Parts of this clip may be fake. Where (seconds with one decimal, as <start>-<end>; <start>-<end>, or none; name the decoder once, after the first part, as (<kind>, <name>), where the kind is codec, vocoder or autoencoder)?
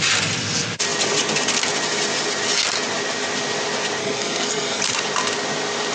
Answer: 4.0-4.8 (codec, SNAC)